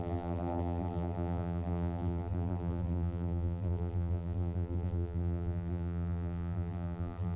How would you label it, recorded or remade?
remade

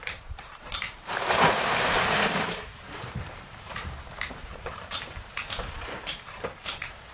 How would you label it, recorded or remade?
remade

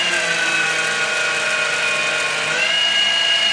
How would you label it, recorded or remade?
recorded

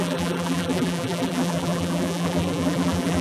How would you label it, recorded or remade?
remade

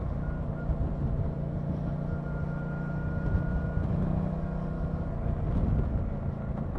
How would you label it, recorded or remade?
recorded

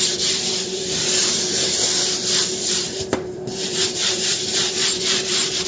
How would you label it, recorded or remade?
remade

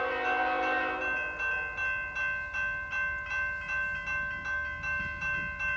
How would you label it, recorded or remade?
recorded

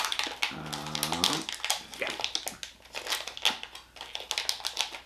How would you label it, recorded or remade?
recorded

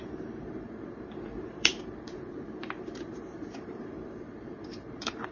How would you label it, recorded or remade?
remade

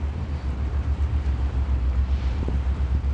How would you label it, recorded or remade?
remade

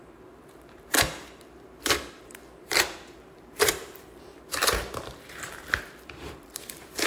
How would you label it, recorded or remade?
remade